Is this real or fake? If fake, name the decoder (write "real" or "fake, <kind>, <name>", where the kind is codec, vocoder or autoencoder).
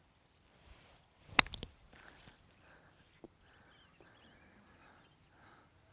real